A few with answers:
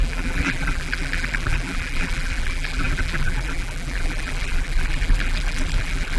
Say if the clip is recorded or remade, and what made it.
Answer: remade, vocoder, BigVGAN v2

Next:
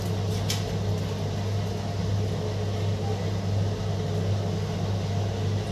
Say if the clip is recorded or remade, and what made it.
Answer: recorded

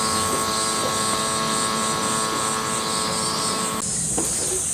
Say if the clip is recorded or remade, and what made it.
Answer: recorded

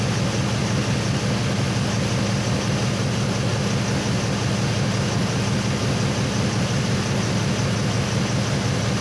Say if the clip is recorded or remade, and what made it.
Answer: recorded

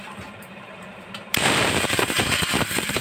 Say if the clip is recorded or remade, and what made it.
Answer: remade, vocoder, BigVGAN v2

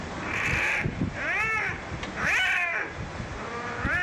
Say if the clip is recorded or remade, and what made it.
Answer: remade, vocoder, BigVGAN v2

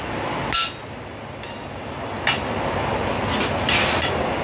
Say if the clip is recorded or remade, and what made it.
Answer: recorded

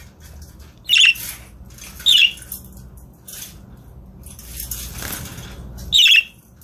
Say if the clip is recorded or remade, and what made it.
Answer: recorded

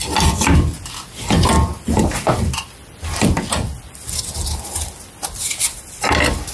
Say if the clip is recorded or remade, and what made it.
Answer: recorded